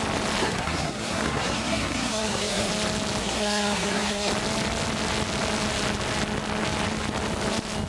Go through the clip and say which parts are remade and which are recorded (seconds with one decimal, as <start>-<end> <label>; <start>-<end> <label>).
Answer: 0.0-0.4 recorded; 0.4-2.7 remade; 2.7-3.2 recorded; 3.2-4.3 remade; 4.3-7.9 recorded